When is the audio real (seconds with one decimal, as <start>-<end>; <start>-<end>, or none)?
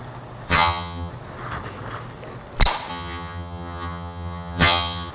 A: 0.0-0.5; 1.1-2.9